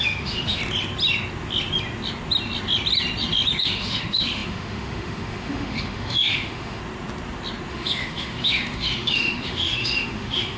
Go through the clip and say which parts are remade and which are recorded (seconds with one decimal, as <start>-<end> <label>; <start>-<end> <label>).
0.0-0.6 remade; 0.6-3.6 recorded; 3.6-6.8 remade; 6.8-7.7 recorded; 7.7-10.6 remade